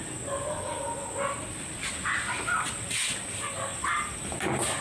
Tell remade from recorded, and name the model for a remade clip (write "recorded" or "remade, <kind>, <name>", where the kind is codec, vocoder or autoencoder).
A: recorded